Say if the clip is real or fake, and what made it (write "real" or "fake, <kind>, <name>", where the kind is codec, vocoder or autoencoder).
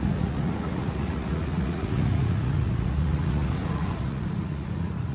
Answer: fake, vocoder, Vocos